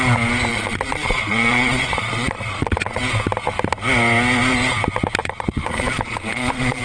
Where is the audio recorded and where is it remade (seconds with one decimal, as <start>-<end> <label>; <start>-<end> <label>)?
0.0-0.5 recorded; 0.5-3.0 remade; 3.0-5.2 recorded; 5.2-6.8 remade